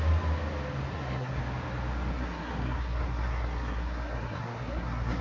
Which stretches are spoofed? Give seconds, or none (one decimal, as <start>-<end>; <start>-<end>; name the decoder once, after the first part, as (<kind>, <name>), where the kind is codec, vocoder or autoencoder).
0.9-1.4 (codec, SNAC); 2.1-5.2